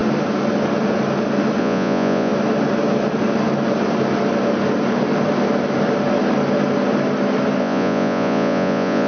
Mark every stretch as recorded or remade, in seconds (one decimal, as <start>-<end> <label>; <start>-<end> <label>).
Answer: 0.0-1.6 recorded; 1.6-2.3 remade; 2.3-7.6 recorded; 7.6-9.1 remade